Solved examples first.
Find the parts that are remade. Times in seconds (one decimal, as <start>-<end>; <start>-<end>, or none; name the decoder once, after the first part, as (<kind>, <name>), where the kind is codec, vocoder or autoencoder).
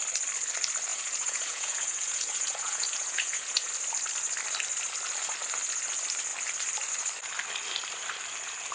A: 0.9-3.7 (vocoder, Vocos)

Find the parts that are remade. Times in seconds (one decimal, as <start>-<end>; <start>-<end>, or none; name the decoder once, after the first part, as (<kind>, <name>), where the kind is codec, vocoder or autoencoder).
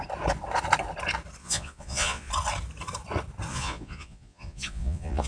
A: 1.4-2.3 (vocoder, Vocos); 3.5-5.3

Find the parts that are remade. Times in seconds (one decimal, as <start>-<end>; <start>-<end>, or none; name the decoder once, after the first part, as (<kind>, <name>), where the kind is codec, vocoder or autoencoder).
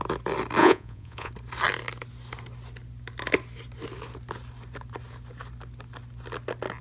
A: 0.6-1.3 (vocoder, Vocos)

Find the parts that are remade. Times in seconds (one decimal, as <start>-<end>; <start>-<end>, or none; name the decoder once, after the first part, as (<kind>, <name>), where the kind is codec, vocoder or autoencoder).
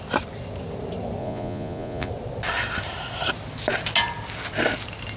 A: 1.2-2.1 (vocoder, Vocos)